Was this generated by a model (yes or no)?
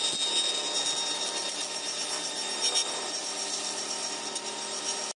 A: no